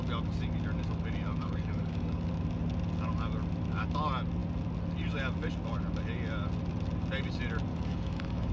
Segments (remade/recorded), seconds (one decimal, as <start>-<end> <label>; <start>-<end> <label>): 0.0-1.4 recorded; 1.4-2.3 remade; 2.3-7.7 recorded; 7.7-8.5 remade